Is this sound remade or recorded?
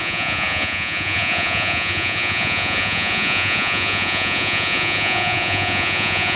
remade